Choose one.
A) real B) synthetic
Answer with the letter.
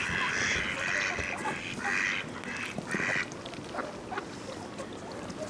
A